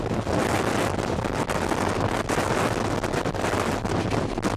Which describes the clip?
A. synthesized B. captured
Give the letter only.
B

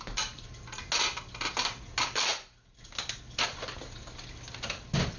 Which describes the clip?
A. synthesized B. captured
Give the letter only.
B